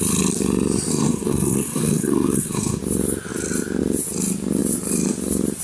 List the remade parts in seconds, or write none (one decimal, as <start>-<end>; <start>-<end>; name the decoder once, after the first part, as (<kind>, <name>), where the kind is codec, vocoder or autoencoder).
0.9-2.8 (codec, SNAC)